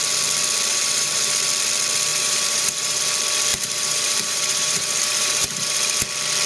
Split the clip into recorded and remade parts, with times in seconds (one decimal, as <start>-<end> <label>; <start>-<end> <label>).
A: 0.0-0.7 recorded; 0.7-1.3 remade; 1.3-2.1 recorded; 2.1-3.0 remade; 3.0-3.5 recorded; 3.5-6.0 remade; 6.0-6.5 recorded